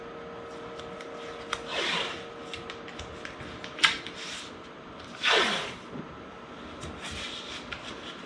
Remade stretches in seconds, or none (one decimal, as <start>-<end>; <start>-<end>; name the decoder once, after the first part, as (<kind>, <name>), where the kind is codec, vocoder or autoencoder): none

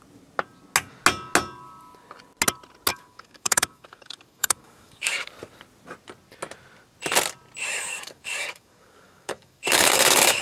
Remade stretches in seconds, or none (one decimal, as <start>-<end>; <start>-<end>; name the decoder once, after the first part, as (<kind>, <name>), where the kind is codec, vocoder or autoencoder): 2.9-5.3 (codec, DAC); 7.7-10.4

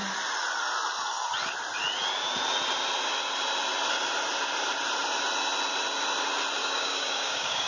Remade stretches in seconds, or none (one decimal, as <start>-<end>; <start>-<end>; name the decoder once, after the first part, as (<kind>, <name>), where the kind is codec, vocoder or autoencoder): 6.6-7.7 (codec, DAC)

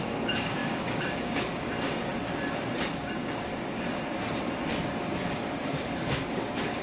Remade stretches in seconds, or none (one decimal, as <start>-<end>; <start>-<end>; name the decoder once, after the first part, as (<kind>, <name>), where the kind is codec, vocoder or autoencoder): 0.0-2.1 (codec, DAC); 2.9-3.5; 5.1-6.8

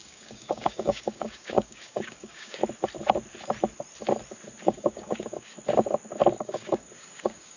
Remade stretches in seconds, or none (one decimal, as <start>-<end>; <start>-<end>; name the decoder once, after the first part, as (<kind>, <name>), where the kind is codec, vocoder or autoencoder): 0.0-2.6 (codec, DAC); 4.6-5.5; 6.4-7.6